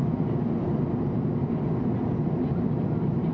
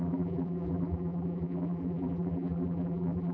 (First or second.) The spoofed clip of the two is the second